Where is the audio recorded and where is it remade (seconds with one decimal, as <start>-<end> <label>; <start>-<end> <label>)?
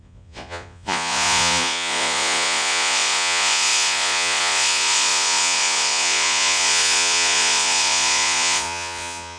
0.0-9.4 remade